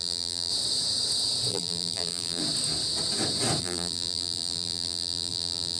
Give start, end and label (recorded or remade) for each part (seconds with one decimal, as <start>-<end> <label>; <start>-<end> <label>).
0.0-0.5 remade; 0.5-1.5 recorded; 1.5-2.4 remade; 2.4-3.6 recorded; 3.6-5.8 remade